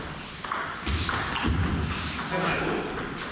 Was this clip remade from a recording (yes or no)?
no